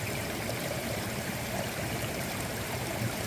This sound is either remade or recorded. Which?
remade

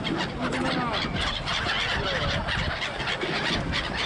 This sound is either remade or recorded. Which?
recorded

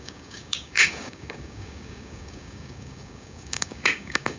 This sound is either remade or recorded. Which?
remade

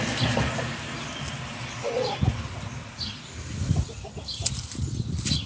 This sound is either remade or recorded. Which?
recorded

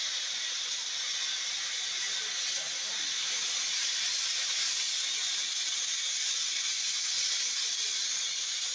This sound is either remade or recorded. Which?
recorded